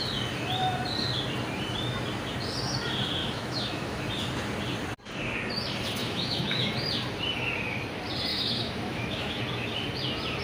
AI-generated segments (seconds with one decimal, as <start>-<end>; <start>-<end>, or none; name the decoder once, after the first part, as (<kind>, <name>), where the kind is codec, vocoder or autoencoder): 3.2-4.0 (autoencoder, DAC-VAE); 6.0-6.7; 8.3-9.4